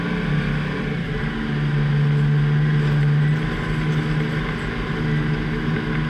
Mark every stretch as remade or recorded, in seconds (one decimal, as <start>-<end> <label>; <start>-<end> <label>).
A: 0.0-6.1 recorded